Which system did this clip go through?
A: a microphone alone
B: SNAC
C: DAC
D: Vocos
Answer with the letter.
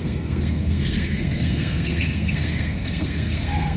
B